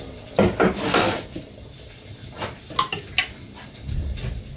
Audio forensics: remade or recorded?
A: recorded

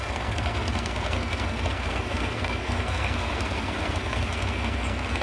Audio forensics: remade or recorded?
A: remade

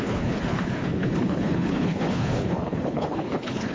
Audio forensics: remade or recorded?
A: remade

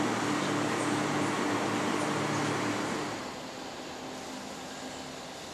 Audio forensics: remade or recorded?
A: recorded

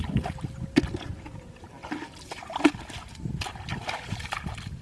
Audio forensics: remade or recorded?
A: recorded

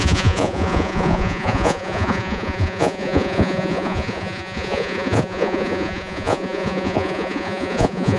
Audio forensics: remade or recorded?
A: remade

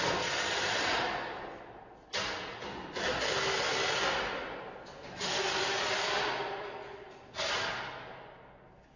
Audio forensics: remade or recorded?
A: recorded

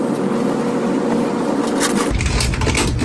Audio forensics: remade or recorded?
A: recorded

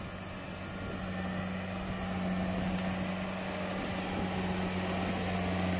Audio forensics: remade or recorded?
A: recorded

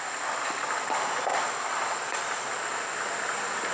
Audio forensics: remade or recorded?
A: recorded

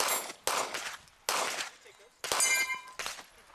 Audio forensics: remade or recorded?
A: recorded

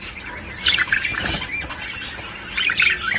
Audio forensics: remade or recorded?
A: recorded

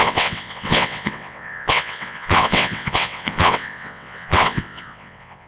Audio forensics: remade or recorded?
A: remade